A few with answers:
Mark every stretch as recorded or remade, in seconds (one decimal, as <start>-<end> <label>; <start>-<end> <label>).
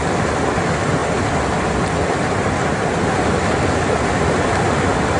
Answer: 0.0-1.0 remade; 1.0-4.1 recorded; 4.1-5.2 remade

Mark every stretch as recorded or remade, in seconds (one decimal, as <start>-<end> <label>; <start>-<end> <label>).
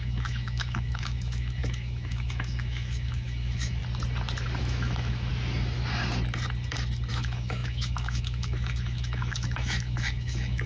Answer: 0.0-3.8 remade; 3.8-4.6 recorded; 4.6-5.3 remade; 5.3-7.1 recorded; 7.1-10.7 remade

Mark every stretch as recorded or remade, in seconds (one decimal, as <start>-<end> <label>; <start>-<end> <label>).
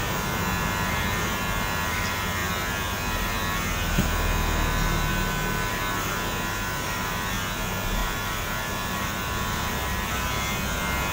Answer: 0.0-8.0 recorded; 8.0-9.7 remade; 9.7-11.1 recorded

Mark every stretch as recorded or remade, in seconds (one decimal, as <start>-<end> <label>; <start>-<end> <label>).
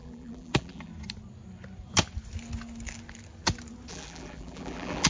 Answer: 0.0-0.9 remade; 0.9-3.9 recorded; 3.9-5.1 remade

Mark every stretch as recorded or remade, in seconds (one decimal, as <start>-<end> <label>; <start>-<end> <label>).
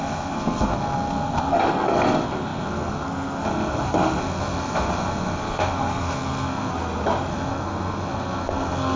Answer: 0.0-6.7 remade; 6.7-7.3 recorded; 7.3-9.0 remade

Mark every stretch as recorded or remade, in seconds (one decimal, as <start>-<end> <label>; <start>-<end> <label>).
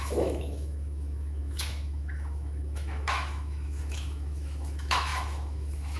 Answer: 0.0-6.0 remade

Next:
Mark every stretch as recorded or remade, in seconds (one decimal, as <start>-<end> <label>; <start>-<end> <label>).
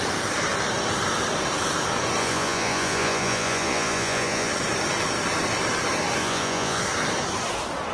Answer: 0.0-2.2 recorded; 2.2-4.5 remade; 4.5-6.2 recorded; 6.2-6.8 remade; 6.8-7.9 recorded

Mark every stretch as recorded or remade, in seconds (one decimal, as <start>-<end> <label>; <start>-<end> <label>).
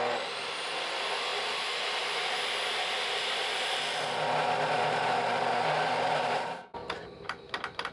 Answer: 0.0-6.8 recorded; 6.8-7.9 remade